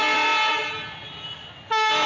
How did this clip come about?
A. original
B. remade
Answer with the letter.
A